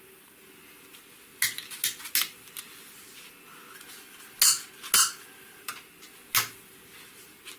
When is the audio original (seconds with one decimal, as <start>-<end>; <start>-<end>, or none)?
0.0-7.6